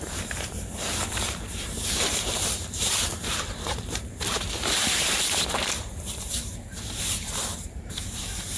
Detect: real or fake fake